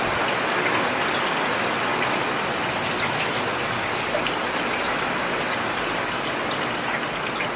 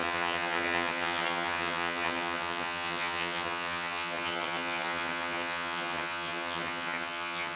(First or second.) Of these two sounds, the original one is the first